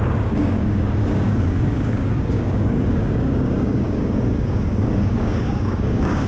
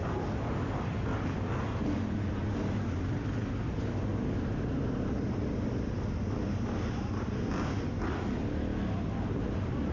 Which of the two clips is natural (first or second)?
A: second